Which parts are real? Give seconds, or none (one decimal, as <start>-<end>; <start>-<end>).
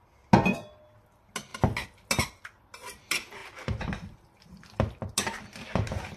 0.0-6.2